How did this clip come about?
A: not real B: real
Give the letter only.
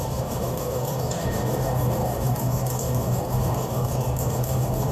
A